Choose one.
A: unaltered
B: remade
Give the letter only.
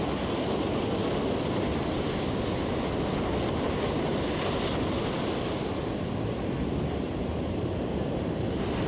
A